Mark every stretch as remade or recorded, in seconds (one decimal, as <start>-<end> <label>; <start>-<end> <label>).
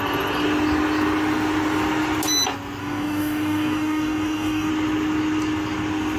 0.0-2.8 recorded; 2.8-4.7 remade; 4.7-6.2 recorded